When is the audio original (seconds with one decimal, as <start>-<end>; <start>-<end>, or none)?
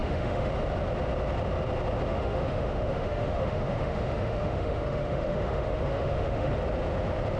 0.5-2.1; 6.5-7.4